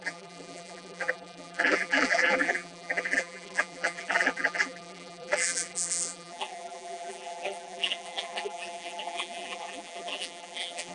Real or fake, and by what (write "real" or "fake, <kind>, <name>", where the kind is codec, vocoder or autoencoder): fake, vocoder, BigVGAN v2